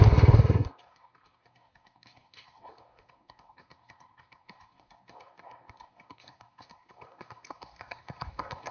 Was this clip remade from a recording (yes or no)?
yes